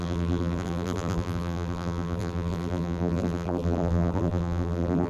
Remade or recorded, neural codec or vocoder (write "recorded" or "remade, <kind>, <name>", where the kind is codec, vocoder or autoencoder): remade, vocoder, BigVGAN v2